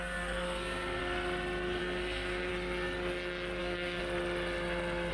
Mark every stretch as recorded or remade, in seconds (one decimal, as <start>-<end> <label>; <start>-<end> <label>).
0.0-1.0 remade; 1.0-1.8 recorded; 1.8-2.5 remade; 2.5-3.6 recorded; 3.6-4.0 remade; 4.0-5.1 recorded